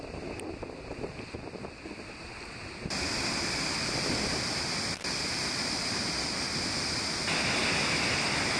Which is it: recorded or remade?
recorded